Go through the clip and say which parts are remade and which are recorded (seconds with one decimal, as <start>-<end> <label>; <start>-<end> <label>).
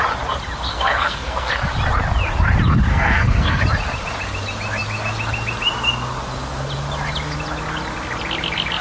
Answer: 0.0-0.7 recorded; 0.7-1.5 remade; 1.5-2.9 recorded; 2.9-3.6 remade; 3.6-8.8 recorded